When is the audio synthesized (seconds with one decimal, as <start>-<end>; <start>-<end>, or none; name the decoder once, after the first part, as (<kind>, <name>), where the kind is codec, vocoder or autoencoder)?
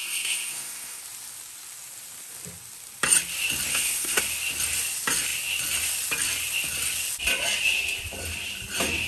0.0-1.0 (codec, SNAC); 3.7-4.2